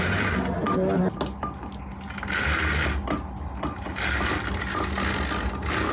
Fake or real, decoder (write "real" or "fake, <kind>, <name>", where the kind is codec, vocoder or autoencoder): real